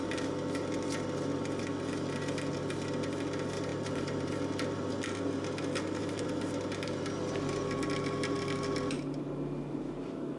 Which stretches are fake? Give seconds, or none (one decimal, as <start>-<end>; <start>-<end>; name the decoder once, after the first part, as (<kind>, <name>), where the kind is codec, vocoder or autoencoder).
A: 3.7-4.3 (vocoder, BigVGAN v2); 6.0-6.5

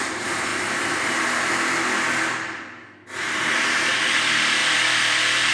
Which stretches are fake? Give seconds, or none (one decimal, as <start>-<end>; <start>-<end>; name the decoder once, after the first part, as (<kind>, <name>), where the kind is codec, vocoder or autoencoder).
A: 4.6-5.5 (vocoder, BigVGAN v2)

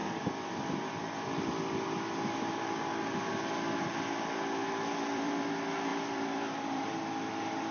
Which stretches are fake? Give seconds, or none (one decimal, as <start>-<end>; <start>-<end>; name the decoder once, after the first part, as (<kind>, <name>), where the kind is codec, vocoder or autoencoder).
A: 0.0-1.4 (vocoder, BigVGAN v2); 4.6-5.5; 5.9-6.9

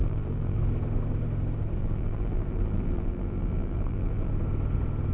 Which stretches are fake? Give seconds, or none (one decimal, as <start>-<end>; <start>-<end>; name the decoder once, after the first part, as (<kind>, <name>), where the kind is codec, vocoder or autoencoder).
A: 0.0-0.6 (vocoder, BigVGAN v2); 1.8-4.3